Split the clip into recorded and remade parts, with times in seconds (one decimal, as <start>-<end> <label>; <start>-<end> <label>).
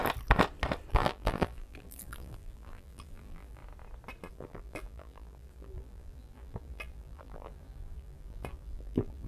0.0-0.9 recorded; 0.9-3.6 remade; 3.6-4.3 recorded; 4.3-9.3 remade